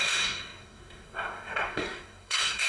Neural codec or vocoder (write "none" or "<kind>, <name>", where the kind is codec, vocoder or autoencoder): codec, SNAC